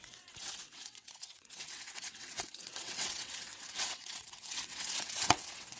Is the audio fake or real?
fake